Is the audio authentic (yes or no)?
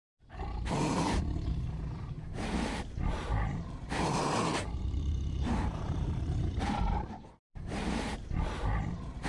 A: no